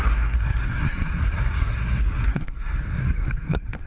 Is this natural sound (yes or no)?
no